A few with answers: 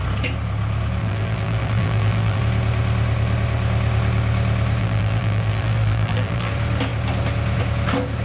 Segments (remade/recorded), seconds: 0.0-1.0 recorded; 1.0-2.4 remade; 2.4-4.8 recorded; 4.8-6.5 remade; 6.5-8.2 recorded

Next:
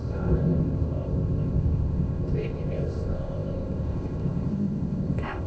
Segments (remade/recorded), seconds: 0.0-5.5 remade

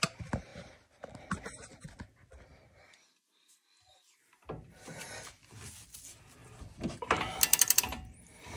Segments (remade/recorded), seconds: 0.0-8.6 recorded

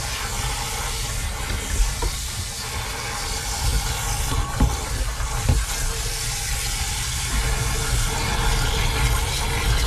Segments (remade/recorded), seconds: 0.0-9.9 recorded

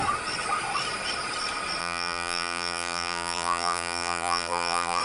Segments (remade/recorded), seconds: 0.0-1.8 recorded; 1.8-5.0 remade

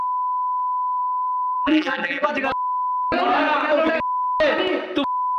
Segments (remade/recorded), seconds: 0.0-1.0 recorded; 1.0-2.3 remade; 2.3-5.4 recorded

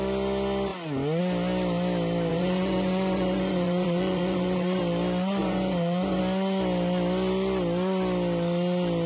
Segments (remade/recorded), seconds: 0.0-2.3 recorded; 2.3-4.8 remade; 4.8-5.4 recorded; 5.4-6.2 remade; 6.2-9.1 recorded

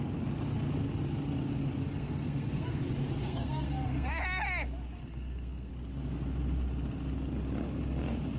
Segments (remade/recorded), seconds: 0.0-1.9 recorded; 1.9-2.8 remade; 2.8-3.2 recorded; 3.2-4.1 remade; 4.1-5.0 recorded; 5.0-5.7 remade; 5.7-8.4 recorded